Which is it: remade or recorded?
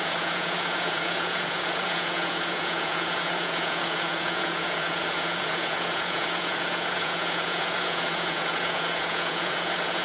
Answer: remade